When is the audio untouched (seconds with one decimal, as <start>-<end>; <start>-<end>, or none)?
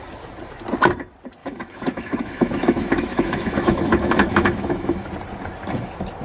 0.0-1.4; 5.1-6.2